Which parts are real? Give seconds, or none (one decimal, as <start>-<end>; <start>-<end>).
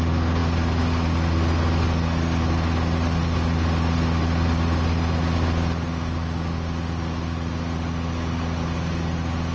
0.0-9.5